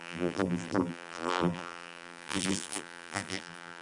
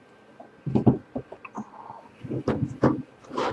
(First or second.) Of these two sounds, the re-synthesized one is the first